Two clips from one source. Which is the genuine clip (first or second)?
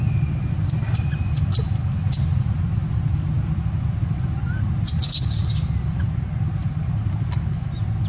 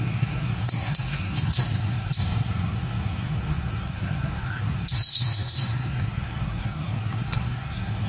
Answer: first